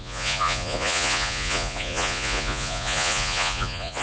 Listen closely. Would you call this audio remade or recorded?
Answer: remade